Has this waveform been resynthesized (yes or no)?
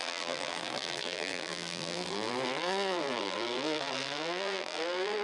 yes